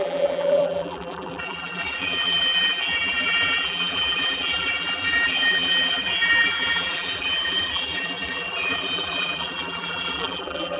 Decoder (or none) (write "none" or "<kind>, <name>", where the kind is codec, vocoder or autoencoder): vocoder, BigVGAN v2